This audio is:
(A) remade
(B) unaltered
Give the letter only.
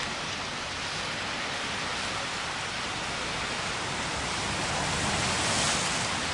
B